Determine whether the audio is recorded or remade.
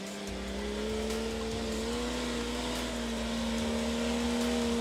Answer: recorded